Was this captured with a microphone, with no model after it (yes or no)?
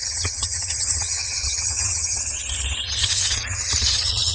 no